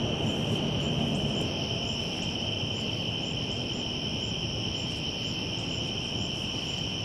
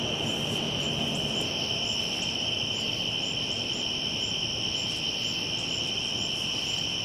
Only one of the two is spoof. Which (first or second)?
first